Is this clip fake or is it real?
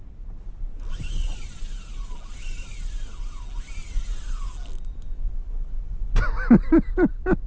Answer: real